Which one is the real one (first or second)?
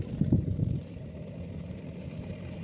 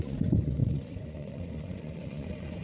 first